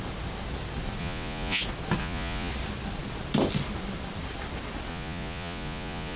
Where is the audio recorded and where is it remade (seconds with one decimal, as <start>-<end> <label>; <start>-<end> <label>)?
0.0-1.0 recorded; 1.0-1.6 remade; 1.6-2.0 recorded; 2.0-2.5 remade; 2.5-4.9 recorded; 4.9-6.2 remade